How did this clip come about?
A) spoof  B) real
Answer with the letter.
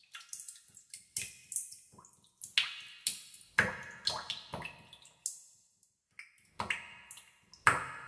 B